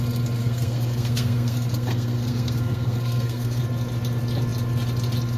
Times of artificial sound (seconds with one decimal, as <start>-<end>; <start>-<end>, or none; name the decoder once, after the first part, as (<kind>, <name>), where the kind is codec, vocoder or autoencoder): 0.4-3.6 (codec, SNAC)